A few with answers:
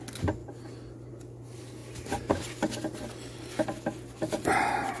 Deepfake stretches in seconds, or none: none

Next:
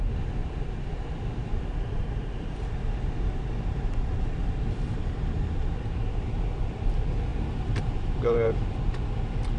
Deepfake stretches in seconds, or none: 0.4-1.0 (vocoder, BigVGAN v2); 1.5-5.7; 7.3-8.7

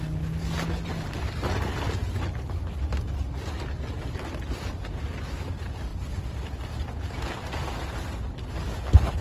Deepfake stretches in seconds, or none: none

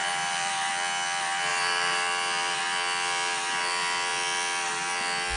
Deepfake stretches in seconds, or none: 0.0-0.7 (vocoder, BigVGAN v2); 1.5-2.6